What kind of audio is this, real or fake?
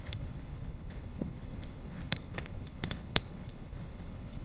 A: fake